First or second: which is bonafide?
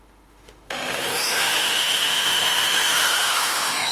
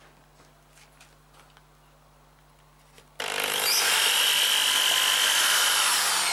second